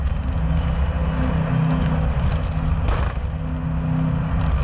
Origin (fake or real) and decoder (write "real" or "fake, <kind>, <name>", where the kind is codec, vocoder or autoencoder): real